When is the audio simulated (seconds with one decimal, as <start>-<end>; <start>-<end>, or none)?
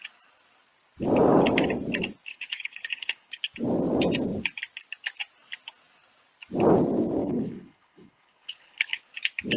2.3-3.4; 7.2-9.0